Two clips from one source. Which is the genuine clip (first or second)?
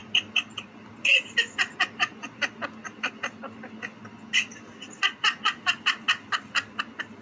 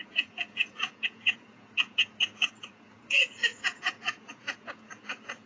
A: first